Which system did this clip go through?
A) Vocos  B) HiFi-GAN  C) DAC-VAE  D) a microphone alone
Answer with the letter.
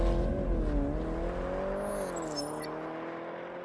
D